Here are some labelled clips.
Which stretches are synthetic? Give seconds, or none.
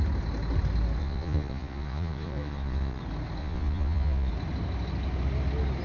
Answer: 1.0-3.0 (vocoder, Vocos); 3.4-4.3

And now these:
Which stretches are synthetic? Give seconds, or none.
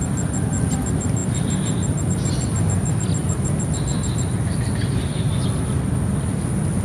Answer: none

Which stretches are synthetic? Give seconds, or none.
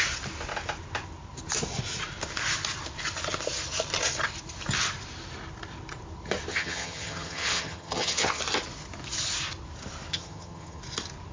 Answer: 6.5-8.4 (vocoder, HiFi-GAN); 10.1-10.8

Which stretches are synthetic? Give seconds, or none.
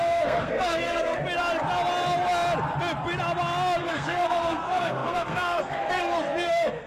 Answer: 0.0-1.2 (codec, SNAC); 3.8-6.9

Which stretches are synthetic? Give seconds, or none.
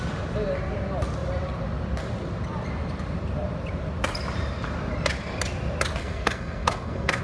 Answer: 6.0-7.2 (codec, SNAC)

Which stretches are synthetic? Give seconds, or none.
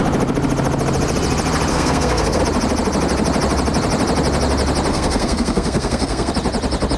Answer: 1.7-2.4 (codec, SNAC); 4.9-6.3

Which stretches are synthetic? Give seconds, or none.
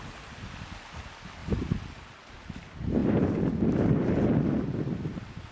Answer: none